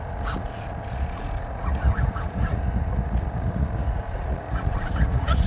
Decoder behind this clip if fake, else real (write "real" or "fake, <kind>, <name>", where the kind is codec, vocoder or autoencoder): fake, vocoder, Vocos